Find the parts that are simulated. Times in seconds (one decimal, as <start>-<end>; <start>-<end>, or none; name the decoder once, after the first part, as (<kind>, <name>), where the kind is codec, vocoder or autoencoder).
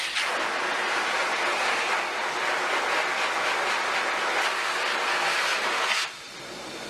1.3-2.4 (vocoder, BigVGAN v2); 5.5-6.4